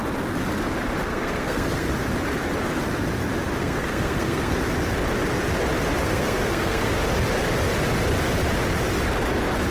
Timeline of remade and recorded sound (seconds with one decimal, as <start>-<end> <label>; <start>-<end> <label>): 0.0-1.1 recorded; 1.1-1.9 remade; 1.9-3.6 recorded; 3.6-4.6 remade; 4.6-6.0 recorded; 6.0-6.9 remade; 6.9-9.7 recorded